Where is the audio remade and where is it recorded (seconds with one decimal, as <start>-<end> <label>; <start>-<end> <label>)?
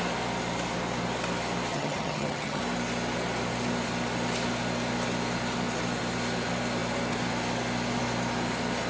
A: 0.0-1.7 recorded; 1.7-2.6 remade; 2.6-8.9 recorded